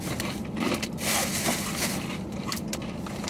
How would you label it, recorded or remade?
remade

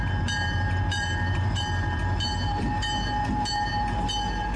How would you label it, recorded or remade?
remade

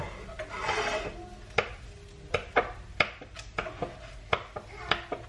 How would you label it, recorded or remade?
recorded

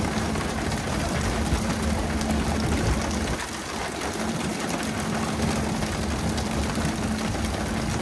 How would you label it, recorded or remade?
recorded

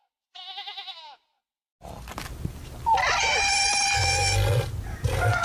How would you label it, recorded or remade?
recorded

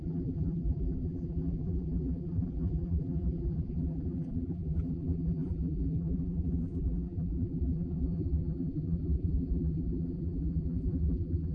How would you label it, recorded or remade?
remade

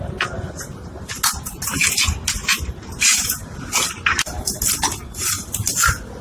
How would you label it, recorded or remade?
recorded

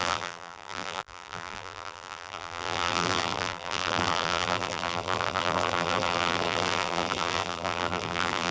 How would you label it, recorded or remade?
remade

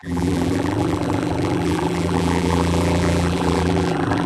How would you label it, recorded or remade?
remade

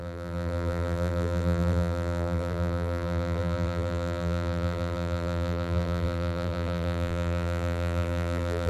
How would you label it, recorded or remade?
remade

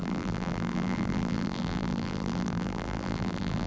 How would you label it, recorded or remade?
remade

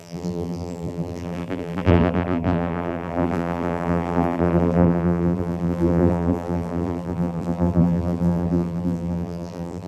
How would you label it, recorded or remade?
remade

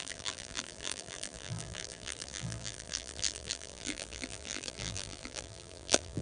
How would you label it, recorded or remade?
remade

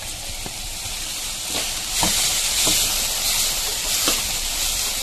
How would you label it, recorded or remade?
remade